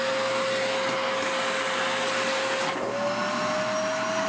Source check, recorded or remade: recorded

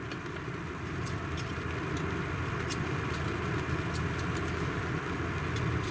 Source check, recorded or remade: recorded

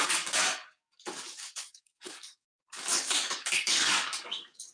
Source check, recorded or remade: remade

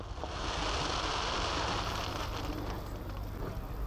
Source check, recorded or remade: recorded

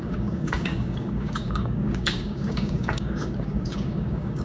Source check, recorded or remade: remade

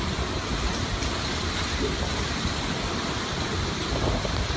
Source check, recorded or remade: recorded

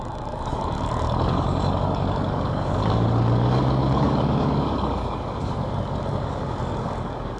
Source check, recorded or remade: remade